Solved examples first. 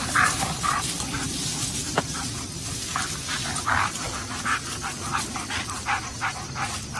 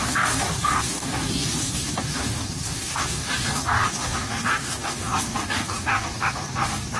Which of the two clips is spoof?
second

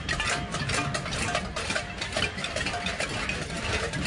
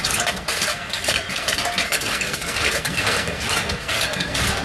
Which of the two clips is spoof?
second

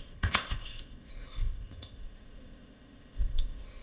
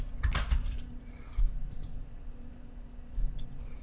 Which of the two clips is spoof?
first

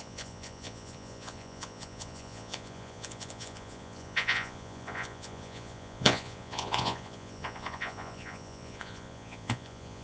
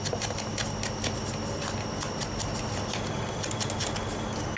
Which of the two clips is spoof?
first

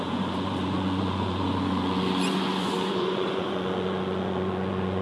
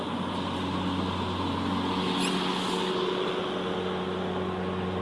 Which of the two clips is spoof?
first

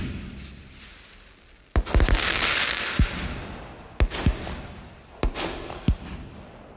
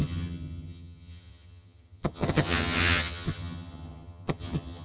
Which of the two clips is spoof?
second